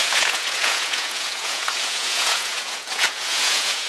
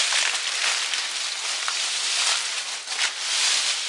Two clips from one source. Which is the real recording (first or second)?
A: second